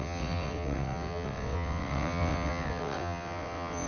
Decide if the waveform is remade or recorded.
remade